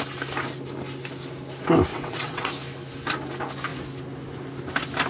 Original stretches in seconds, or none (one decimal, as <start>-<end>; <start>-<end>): 0.0-1.9; 2.5-5.1